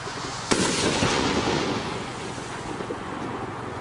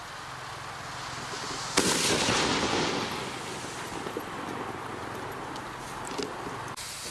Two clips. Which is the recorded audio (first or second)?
second